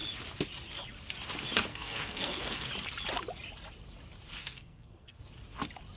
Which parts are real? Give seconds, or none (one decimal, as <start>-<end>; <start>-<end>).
0.0-1.7; 2.7-4.4; 5.2-6.0